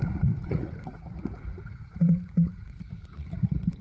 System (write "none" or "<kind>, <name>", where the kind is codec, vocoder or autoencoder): vocoder, Vocos